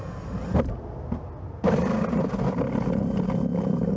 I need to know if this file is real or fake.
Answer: real